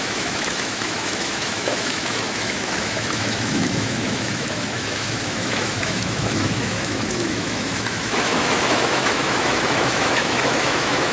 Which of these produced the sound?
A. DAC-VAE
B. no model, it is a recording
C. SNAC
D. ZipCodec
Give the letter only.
A